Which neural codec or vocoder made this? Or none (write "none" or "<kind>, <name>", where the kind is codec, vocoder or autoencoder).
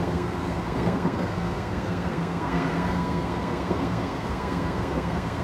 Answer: codec, SNAC